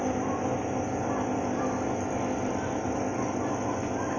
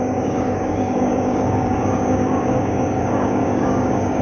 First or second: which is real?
first